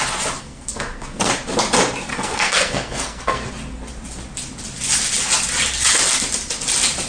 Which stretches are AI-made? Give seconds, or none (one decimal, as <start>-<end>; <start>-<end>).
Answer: 0.4-1.3; 2.1-3.5

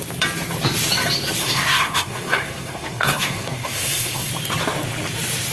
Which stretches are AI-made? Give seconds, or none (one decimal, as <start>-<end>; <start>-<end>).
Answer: 1.4-4.3

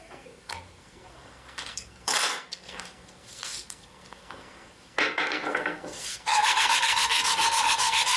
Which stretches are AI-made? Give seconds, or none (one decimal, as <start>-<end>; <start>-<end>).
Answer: 0.0-8.2

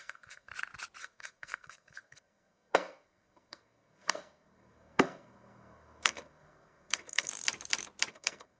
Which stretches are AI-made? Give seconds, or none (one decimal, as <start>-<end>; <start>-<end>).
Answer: 0.0-0.5; 1.0-7.3; 8.1-8.6

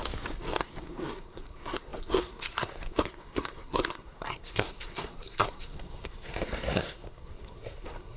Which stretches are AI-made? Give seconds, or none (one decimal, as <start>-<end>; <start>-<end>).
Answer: 0.6-8.2

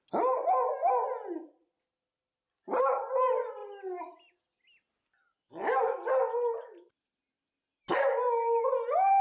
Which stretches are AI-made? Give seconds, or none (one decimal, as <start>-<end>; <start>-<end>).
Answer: none

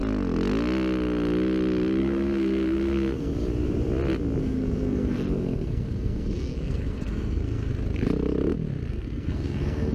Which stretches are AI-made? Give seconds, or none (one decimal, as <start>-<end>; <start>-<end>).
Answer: 2.0-3.3; 4.4-7.7; 8.9-9.9